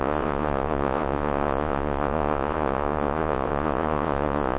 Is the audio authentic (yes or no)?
no